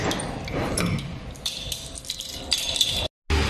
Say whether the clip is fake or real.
real